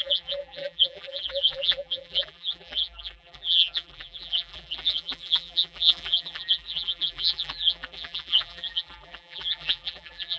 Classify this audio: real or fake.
fake